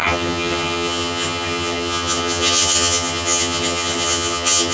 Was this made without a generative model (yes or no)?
no